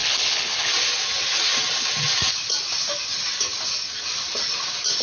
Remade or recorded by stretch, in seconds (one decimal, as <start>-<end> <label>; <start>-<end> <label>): 0.0-0.7 remade; 0.7-5.0 recorded